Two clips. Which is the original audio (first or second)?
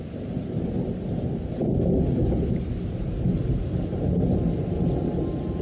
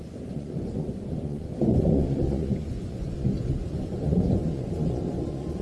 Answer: first